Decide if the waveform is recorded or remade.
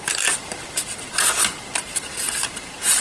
recorded